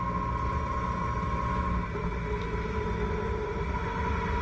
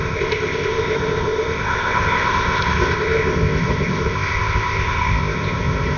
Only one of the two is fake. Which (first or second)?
second